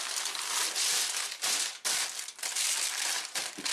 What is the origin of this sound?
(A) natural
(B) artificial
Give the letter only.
A